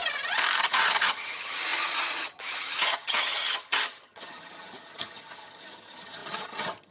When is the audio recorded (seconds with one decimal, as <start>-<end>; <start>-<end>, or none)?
0.0-0.6